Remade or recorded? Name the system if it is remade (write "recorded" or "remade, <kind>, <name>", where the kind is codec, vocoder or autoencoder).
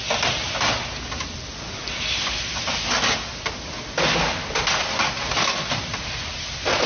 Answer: recorded